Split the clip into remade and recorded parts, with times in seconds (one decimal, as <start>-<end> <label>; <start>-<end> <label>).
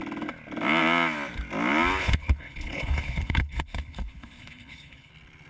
0.0-2.0 recorded; 2.0-5.1 remade; 5.1-5.5 recorded